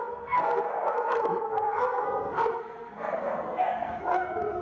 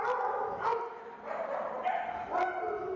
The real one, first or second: second